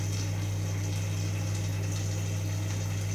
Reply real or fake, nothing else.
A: real